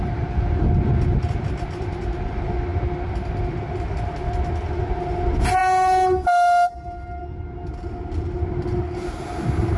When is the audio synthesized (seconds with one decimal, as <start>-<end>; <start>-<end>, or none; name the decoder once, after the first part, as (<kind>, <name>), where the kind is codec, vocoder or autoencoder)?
none